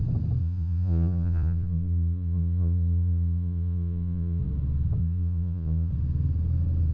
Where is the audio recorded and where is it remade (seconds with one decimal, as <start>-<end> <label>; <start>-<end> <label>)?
0.0-0.4 recorded; 0.4-4.4 remade; 4.4-5.0 recorded; 5.0-5.9 remade; 5.9-6.9 recorded